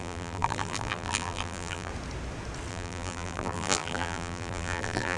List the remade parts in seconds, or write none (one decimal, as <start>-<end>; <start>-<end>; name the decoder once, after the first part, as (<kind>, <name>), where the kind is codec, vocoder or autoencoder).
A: 0.0-1.9 (vocoder, BigVGAN v2); 2.7-5.2